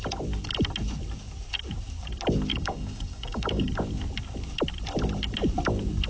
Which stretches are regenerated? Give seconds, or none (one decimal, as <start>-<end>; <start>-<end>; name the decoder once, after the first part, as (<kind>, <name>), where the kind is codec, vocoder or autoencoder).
2.5-3.7 (codec, DAC)